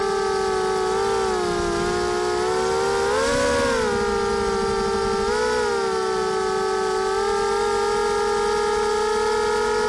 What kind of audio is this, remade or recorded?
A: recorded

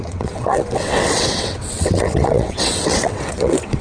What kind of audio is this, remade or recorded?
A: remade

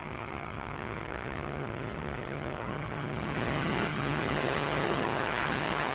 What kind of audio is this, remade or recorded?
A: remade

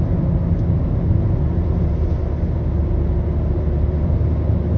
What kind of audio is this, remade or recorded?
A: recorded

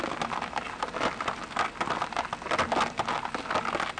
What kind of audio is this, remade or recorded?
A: recorded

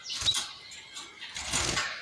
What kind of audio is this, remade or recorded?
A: recorded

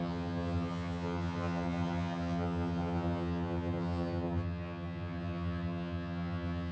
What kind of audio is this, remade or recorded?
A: remade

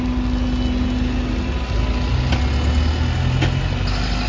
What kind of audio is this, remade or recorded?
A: recorded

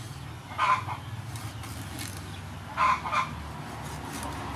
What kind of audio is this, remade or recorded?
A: recorded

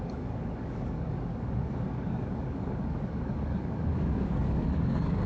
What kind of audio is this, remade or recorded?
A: remade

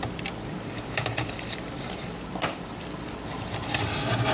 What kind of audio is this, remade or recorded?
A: remade